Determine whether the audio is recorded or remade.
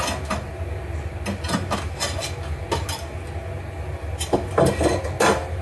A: recorded